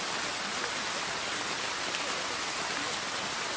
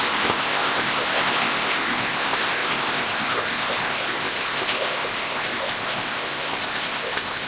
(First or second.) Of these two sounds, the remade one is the second